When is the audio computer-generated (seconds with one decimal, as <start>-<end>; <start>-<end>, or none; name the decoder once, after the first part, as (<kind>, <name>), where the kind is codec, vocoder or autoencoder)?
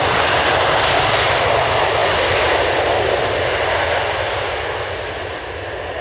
0.0-0.5 (vocoder, Vocos)